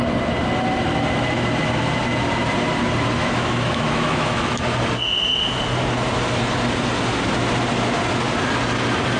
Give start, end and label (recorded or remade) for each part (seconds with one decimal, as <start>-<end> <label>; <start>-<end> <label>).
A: 0.0-3.2 recorded; 3.2-4.6 remade; 4.6-9.2 recorded